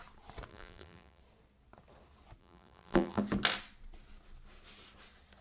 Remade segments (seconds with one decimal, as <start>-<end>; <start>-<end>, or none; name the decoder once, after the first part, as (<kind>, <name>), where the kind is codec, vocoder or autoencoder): 0.5-1.2 (vocoder, BigVGAN v2); 2.4-3.2